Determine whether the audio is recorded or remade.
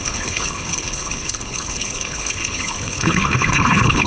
remade